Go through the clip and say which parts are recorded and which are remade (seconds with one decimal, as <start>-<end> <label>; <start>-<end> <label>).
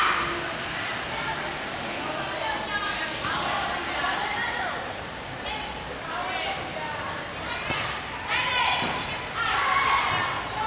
0.0-4.4 recorded; 4.4-5.5 remade; 5.5-10.7 recorded